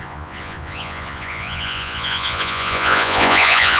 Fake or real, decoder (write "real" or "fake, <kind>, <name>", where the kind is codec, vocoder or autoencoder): fake, vocoder, Vocos